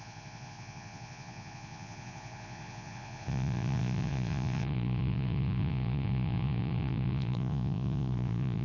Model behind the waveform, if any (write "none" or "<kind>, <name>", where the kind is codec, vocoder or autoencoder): vocoder, Vocos